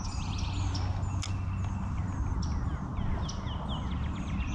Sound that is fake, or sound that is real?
real